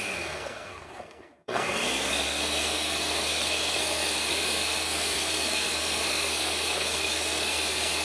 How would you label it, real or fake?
fake